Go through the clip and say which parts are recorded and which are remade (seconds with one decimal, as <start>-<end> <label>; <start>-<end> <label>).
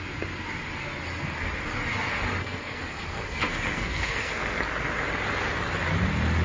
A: 0.0-2.4 recorded; 2.4-4.6 remade; 4.6-6.4 recorded